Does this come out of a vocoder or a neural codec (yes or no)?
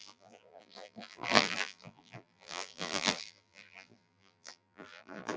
yes